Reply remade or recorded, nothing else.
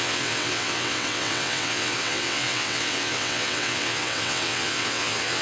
remade